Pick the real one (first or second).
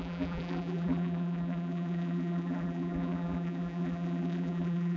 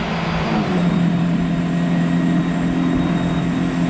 second